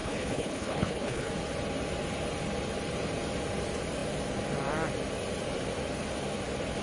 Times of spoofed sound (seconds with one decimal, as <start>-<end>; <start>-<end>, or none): 0.0-1.3